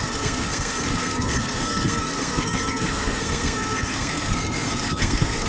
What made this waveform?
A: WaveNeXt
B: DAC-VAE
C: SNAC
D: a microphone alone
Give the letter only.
C